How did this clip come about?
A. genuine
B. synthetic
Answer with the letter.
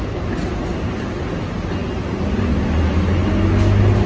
A